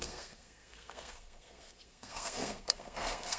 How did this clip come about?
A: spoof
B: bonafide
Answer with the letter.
A